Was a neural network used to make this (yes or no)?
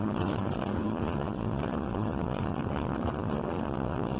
yes